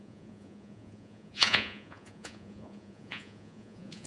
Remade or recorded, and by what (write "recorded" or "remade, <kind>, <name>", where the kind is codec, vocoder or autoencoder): remade, vocoder, Vocos